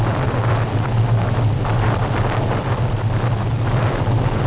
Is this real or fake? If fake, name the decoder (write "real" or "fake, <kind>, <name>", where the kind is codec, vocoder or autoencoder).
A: real